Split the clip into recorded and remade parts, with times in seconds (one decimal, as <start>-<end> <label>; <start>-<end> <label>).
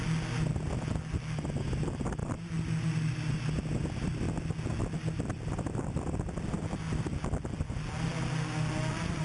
0.0-9.2 recorded